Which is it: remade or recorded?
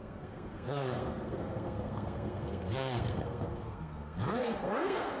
remade